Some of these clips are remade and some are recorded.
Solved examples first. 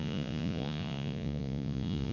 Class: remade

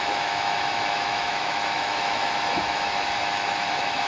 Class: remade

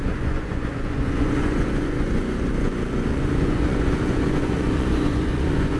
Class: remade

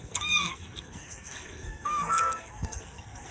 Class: remade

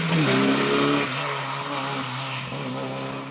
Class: recorded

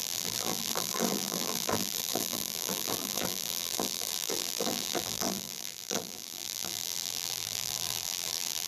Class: remade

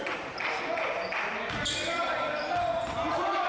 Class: remade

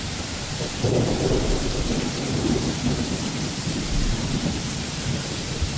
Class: remade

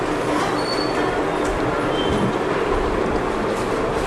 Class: recorded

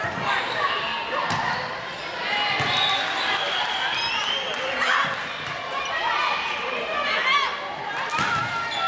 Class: recorded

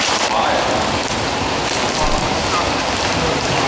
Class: recorded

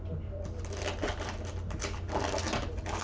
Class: recorded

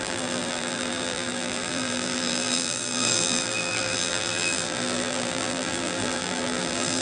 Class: remade